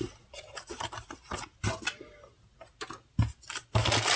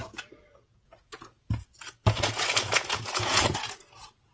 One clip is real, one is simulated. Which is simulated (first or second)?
second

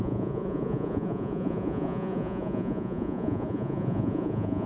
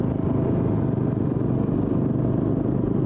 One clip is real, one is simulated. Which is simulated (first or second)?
first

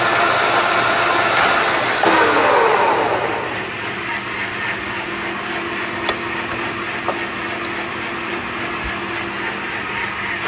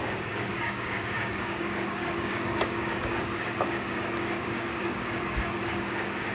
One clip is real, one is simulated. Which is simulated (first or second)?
second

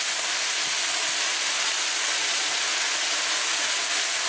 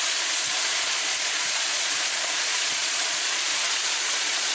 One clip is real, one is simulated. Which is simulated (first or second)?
second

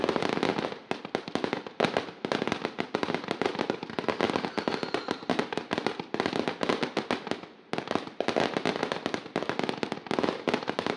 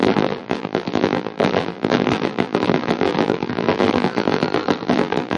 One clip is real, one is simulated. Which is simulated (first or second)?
second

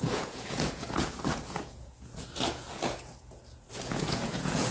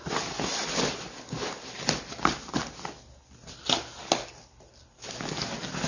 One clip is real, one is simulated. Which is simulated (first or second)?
first